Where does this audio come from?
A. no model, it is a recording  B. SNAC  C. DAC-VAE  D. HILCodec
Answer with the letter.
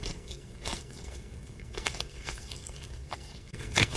B